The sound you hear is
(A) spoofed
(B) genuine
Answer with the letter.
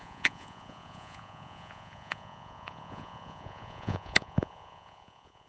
A